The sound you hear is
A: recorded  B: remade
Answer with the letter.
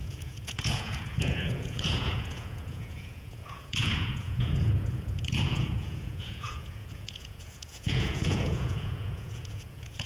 B